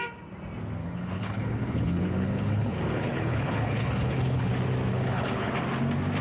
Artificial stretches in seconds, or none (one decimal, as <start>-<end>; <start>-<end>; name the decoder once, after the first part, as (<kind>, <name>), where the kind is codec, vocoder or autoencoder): 0.8-4.5 (codec, HILCodec); 4.9-5.5